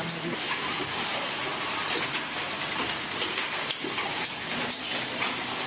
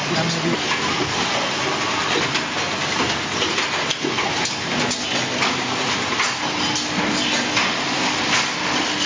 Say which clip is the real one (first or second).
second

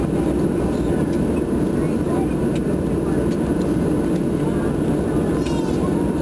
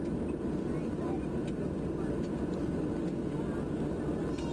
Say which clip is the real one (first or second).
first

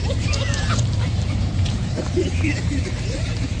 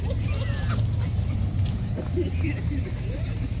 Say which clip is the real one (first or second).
second